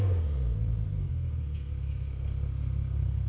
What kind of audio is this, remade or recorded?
remade